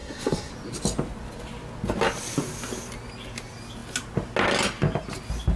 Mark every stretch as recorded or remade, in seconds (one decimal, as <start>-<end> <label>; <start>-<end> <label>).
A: 0.0-0.5 remade; 0.5-5.6 recorded